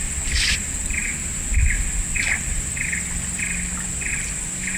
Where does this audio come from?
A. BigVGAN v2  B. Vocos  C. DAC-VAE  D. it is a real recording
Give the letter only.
D